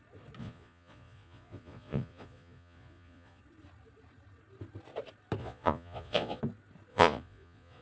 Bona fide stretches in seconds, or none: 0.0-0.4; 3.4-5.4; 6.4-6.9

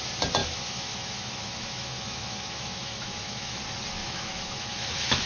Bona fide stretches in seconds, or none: 0.0-0.4; 3.6-4.0

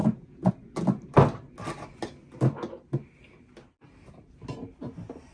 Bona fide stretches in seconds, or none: 0.5-5.3

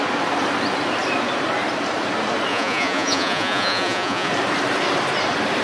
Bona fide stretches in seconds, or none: 0.0-2.5; 4.3-5.6

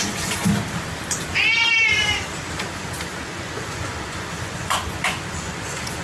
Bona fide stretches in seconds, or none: 0.4-2.8